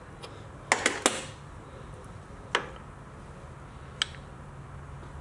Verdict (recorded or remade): recorded